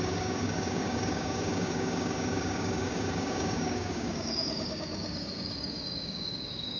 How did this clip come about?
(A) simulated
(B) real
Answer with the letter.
A